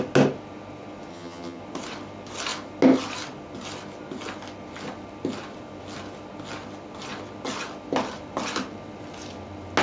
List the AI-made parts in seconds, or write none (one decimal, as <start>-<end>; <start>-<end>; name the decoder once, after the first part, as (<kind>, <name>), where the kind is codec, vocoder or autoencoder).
1.1-1.6 (vocoder, HiFi-GAN)